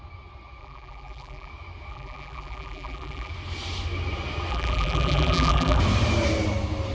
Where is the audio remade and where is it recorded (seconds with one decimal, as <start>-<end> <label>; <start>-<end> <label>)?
0.0-0.6 recorded; 0.6-1.5 remade; 1.5-1.9 recorded; 1.9-3.3 remade; 3.3-4.5 recorded; 4.5-5.8 remade; 5.8-6.9 recorded